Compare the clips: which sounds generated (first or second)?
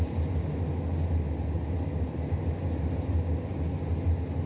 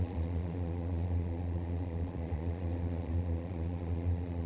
second